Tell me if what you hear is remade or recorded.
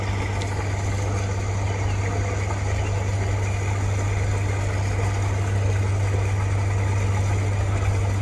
recorded